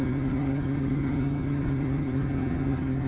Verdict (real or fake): fake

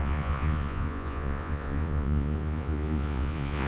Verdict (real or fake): fake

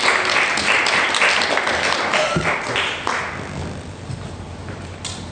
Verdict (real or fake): real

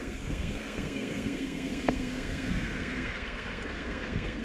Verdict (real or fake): fake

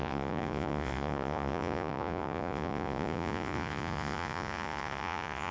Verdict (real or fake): fake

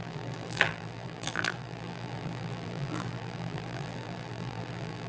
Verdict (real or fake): fake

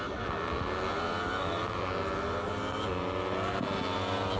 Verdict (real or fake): real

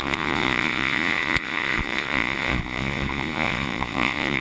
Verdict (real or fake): fake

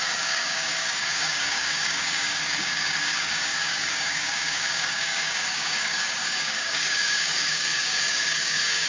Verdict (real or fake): fake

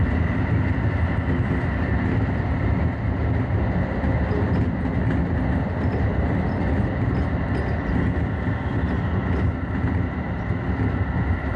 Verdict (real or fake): real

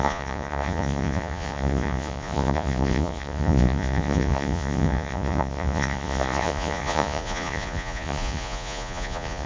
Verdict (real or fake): fake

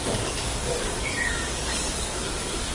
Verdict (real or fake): fake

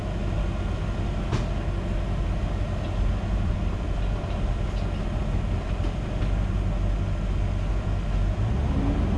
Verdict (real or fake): real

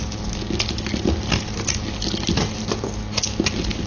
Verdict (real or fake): real